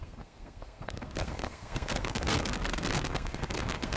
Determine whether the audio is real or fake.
fake